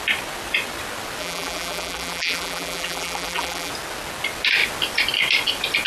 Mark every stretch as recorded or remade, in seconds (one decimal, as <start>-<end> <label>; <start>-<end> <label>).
0.0-1.2 recorded; 1.2-3.7 remade; 3.7-5.9 recorded